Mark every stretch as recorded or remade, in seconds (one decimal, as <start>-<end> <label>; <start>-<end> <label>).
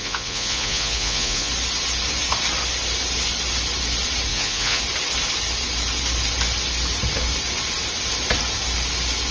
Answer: 0.0-1.5 remade; 1.5-4.3 recorded; 4.3-4.8 remade; 4.8-9.3 recorded